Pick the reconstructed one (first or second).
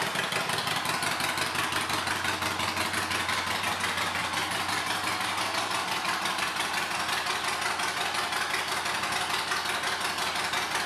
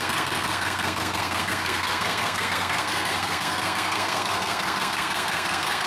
second